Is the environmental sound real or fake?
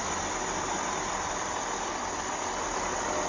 real